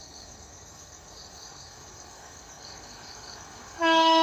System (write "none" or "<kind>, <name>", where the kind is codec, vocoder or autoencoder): codec, DAC